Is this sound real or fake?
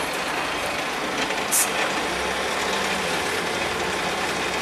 real